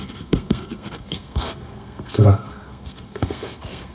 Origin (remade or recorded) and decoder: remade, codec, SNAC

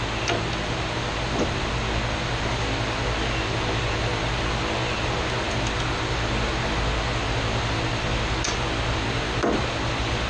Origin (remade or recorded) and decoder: recorded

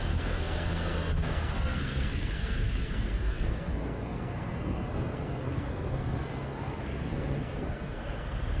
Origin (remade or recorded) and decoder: remade, codec, SNAC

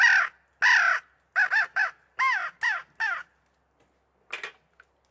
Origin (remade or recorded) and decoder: recorded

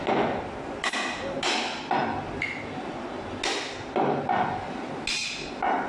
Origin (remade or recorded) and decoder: recorded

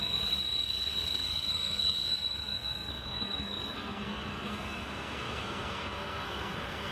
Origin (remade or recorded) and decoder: remade, codec, SNAC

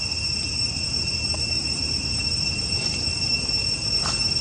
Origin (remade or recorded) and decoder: recorded